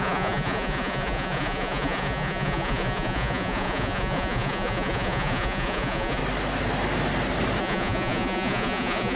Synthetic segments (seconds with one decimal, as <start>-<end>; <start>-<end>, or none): 0.0-6.2; 7.6-9.2